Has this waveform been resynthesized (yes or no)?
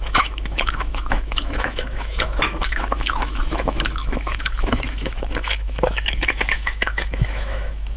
yes